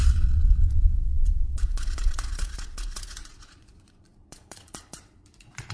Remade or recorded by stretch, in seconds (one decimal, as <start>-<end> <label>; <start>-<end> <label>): 0.0-5.7 remade